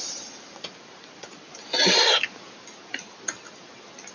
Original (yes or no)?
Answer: no